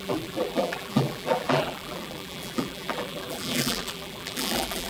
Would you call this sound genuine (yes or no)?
no